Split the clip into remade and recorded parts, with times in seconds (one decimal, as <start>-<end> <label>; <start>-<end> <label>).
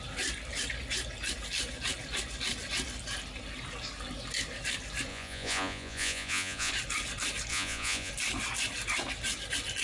0.0-5.1 recorded; 5.1-6.7 remade; 6.7-7.5 recorded; 7.5-8.1 remade; 8.1-9.8 recorded